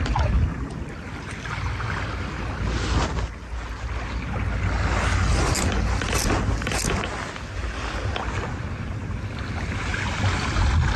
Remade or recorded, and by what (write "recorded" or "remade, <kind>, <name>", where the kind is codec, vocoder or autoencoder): recorded